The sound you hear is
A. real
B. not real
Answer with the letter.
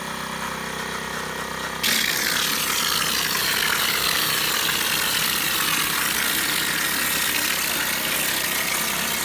A